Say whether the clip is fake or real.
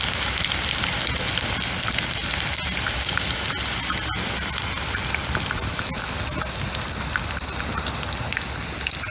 real